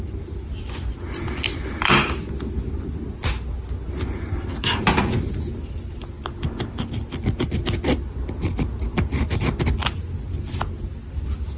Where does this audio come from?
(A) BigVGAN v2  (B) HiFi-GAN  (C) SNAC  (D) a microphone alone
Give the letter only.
D